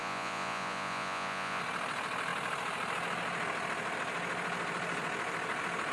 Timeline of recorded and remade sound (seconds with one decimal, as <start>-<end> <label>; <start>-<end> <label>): 0.0-1.6 remade; 1.6-5.9 recorded